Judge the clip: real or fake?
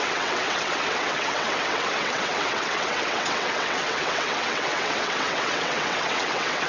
fake